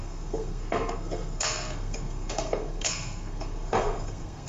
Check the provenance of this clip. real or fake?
fake